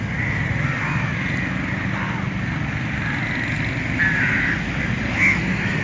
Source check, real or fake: real